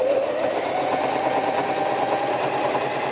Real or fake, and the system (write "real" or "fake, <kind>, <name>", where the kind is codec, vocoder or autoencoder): real